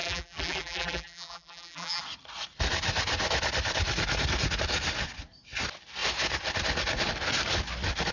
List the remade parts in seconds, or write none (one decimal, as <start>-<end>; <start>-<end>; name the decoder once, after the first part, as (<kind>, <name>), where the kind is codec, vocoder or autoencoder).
0.0-2.0 (vocoder, BigVGAN v2)

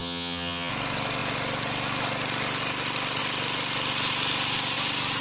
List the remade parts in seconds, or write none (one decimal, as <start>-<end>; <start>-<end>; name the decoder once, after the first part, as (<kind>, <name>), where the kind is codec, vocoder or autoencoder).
0.0-0.7 (vocoder, HiFi-GAN)

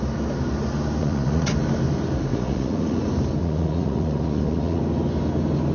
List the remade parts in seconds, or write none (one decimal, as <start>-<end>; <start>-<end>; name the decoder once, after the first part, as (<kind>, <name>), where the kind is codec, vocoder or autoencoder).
1.0-1.5 (vocoder, Vocos); 2.3-3.0; 3.4-4.8

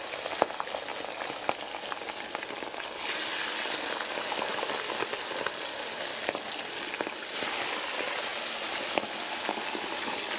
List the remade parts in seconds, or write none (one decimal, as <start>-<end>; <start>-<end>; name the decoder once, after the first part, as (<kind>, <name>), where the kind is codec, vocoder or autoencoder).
none

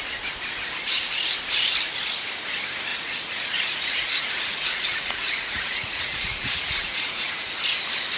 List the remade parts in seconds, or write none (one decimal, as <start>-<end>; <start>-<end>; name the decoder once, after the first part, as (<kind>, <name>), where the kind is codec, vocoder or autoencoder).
2.9-7.3 (vocoder, Vocos)

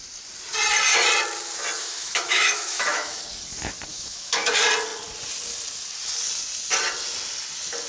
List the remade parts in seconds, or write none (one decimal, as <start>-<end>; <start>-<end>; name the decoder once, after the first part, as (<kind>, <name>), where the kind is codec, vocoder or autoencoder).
1.8-3.2 (autoencoder, DAC-VAE); 3.9-4.5

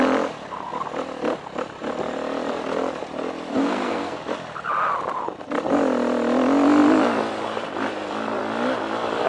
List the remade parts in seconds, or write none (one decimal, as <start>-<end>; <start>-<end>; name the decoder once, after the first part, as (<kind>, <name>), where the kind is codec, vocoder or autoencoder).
3.5-4.2 (codec, SNAC)